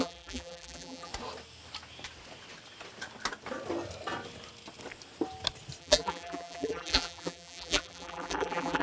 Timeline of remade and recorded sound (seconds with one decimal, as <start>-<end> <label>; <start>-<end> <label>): 0.0-1.1 remade; 1.1-5.8 recorded; 5.8-8.8 remade